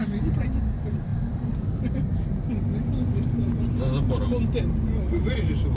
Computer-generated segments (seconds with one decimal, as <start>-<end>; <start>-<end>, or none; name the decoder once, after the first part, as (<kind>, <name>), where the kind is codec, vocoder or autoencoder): none